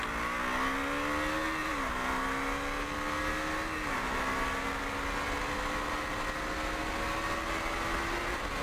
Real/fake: real